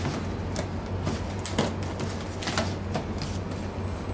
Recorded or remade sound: recorded